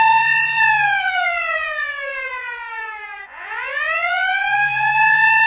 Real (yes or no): no